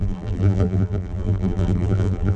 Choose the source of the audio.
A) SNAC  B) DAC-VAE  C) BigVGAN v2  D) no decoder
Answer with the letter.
C